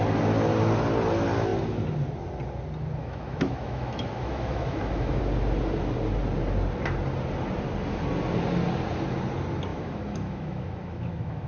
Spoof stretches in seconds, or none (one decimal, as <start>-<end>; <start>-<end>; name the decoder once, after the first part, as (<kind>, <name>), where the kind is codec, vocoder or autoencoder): 3.0-5.2 (autoencoder, DAC-VAE); 9.7-11.5